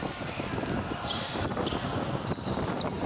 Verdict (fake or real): real